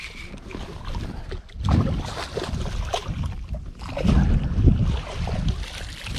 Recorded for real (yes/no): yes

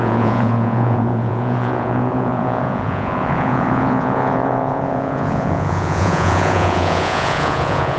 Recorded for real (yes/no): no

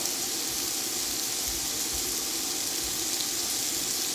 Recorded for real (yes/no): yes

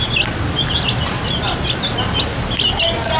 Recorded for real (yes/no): yes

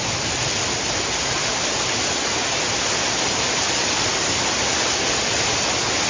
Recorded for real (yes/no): yes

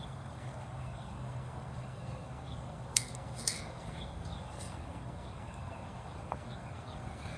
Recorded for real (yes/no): no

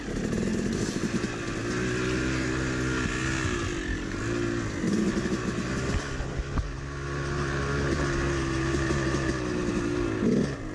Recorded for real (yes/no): yes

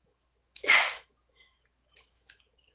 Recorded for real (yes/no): no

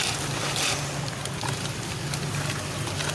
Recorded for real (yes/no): yes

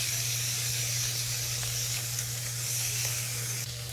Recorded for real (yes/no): no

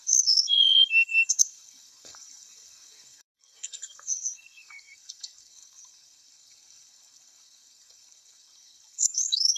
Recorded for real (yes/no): no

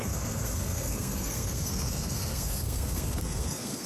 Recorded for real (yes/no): no